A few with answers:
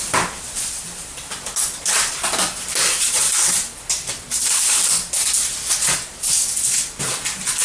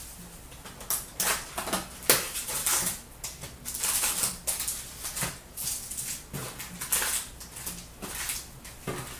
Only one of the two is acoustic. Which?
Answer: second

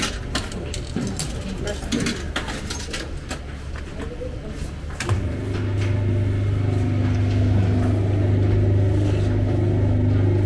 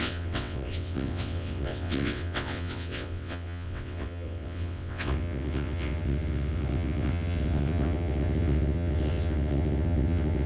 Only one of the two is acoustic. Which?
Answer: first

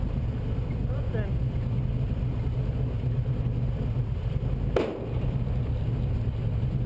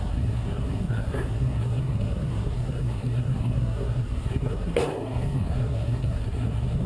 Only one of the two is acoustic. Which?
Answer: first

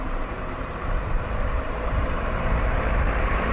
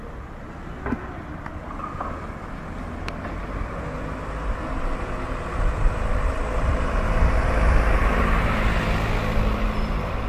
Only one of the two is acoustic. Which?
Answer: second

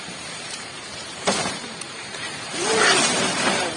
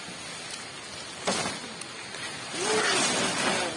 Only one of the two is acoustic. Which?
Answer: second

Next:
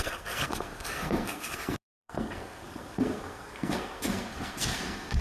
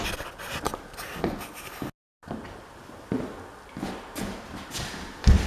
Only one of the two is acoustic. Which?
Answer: second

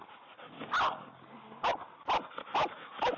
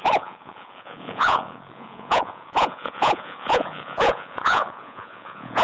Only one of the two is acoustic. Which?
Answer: first